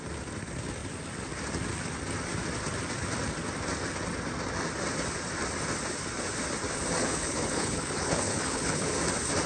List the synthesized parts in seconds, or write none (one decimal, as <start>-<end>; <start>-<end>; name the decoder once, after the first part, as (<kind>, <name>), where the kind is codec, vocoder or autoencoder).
7.0-8.9 (codec, HILCodec)